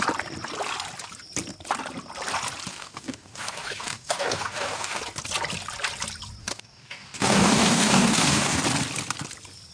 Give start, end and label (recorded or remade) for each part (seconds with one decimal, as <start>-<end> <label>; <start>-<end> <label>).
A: 0.0-2.7 recorded; 2.7-5.0 remade; 5.0-6.4 recorded; 6.4-8.6 remade; 8.6-9.7 recorded